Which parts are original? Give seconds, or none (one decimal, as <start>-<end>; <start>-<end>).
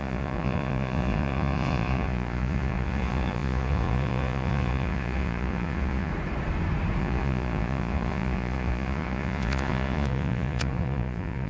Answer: 6.1-7.0